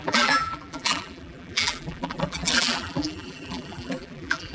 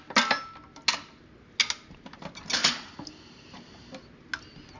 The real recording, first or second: second